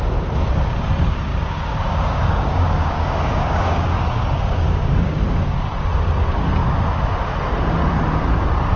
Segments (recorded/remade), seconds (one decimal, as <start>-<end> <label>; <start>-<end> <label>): 0.0-1.3 recorded; 1.3-5.6 remade; 5.6-8.8 recorded